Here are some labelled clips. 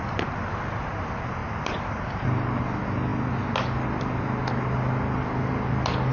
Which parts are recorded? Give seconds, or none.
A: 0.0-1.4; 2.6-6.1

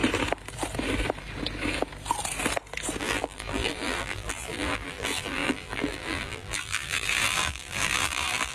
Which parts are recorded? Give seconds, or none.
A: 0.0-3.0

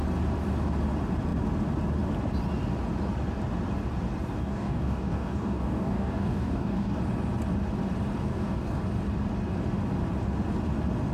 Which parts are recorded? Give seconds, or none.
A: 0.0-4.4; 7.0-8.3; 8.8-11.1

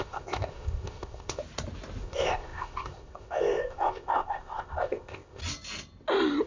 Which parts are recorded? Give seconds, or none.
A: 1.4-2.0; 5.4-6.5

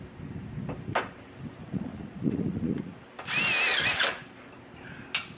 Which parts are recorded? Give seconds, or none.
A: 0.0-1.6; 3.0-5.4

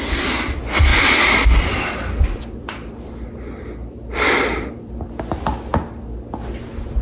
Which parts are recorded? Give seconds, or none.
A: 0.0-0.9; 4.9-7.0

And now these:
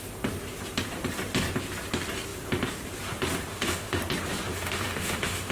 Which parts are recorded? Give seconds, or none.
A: 0.0-3.5; 4.0-4.5

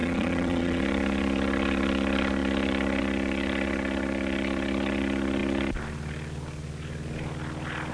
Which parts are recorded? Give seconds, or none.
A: 0.8-7.9